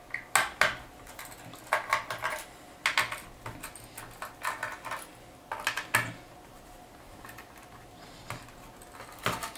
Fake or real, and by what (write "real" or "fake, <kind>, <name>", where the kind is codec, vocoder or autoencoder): real